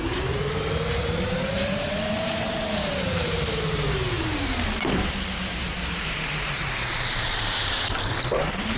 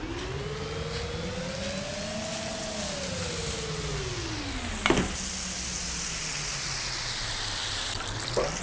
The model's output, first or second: first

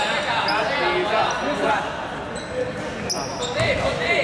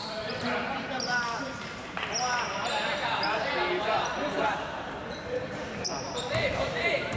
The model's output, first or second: second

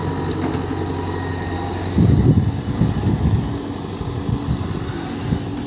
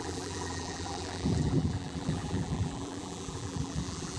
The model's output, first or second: second